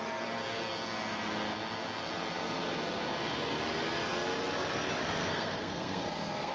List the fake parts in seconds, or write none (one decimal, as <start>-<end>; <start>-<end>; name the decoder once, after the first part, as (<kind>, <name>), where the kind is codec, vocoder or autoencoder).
5.2-6.5 (codec, SNAC)